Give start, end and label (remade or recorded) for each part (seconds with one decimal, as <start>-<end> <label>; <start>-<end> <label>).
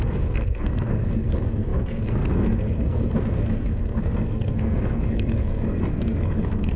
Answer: 0.0-6.8 remade